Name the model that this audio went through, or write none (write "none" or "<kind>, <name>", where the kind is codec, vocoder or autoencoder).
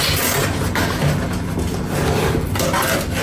none